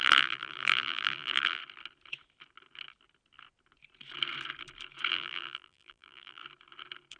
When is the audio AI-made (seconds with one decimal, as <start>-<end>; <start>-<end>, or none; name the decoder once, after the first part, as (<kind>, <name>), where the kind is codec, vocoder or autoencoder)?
0.0-1.6 (vocoder, BigVGAN v2); 5.1-6.4